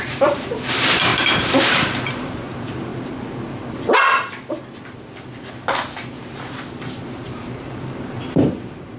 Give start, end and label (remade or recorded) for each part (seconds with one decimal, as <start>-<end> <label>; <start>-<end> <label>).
0.0-2.9 remade; 2.9-6.3 recorded; 6.3-9.0 remade